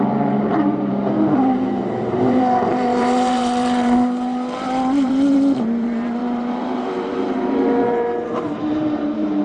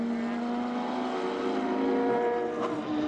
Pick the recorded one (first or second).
second